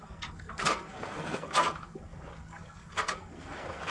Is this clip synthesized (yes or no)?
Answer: yes